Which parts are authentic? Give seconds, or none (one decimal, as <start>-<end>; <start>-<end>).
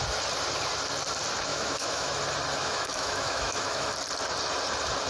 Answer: 0.0-1.5; 2.2-2.6; 3.9-5.1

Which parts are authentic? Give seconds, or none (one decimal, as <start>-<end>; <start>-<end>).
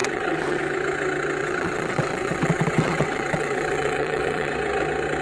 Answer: 0.6-1.4; 4.5-5.2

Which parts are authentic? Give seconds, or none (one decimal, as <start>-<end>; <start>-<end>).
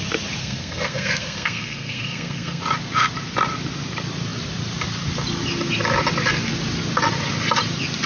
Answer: 0.0-0.4; 2.6-8.1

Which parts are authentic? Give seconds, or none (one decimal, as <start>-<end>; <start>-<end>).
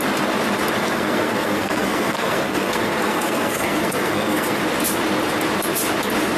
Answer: 0.0-0.8; 4.6-6.4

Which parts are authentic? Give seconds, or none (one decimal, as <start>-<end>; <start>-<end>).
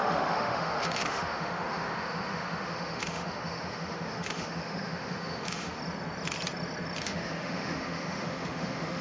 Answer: 5.8-7.0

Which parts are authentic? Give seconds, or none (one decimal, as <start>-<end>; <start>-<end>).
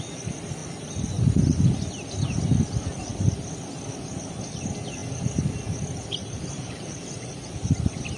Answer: 0.0-3.1; 3.7-5.0